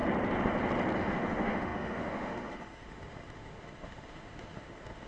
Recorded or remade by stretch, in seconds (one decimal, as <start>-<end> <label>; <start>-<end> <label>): 0.0-1.0 recorded; 1.0-5.1 remade